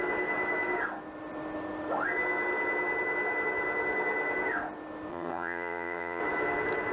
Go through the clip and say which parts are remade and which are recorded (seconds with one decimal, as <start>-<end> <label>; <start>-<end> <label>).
0.0-5.1 recorded; 5.1-6.2 remade; 6.2-6.9 recorded